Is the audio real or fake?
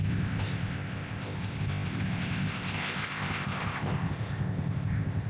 fake